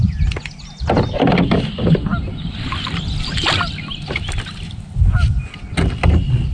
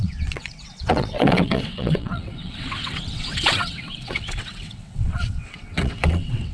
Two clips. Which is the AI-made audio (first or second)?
second